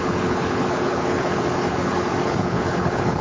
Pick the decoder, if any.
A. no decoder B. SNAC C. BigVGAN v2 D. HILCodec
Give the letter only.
D